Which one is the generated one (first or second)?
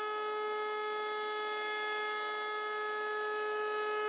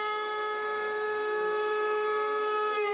second